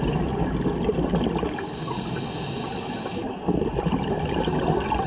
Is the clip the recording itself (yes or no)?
yes